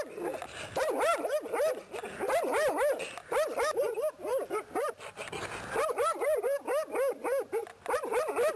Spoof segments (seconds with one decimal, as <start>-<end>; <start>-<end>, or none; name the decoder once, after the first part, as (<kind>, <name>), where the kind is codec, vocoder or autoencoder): 4.3-5.3 (vocoder, BigVGAN v2)

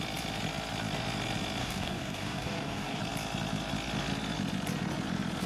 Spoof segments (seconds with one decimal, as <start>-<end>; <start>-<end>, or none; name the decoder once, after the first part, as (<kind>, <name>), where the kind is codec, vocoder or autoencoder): 1.6-3.0 (codec, DAC)

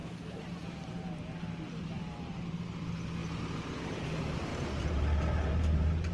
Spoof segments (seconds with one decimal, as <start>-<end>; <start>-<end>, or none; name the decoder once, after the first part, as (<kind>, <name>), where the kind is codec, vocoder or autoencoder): 0.0-3.2 (vocoder, BigVGAN v2); 3.8-6.1

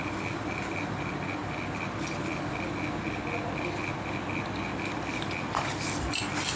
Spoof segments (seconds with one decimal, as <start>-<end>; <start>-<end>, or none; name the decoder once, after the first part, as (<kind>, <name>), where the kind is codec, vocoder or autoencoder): none

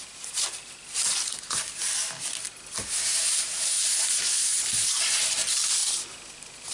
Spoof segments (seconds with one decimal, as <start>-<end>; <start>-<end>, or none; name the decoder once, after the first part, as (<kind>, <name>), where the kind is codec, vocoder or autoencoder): none

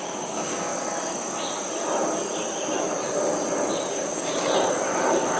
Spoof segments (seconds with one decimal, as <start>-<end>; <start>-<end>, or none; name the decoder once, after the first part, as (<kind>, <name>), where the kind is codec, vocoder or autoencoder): 0.0-0.7 (codec, DAC); 3.9-4.3

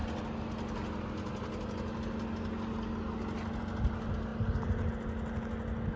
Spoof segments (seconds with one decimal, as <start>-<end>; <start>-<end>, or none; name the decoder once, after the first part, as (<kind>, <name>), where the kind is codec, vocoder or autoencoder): none

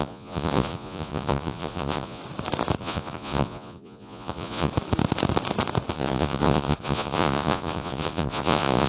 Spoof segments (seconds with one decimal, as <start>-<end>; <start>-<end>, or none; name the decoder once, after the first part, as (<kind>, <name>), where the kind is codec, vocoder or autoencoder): 0.0-2.2 (vocoder, Vocos); 2.8-4.7; 5.9-8.9